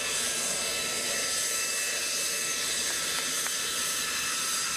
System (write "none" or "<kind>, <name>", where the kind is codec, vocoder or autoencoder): none